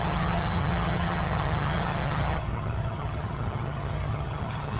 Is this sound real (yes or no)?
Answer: no